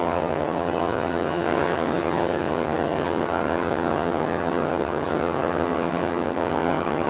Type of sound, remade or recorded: remade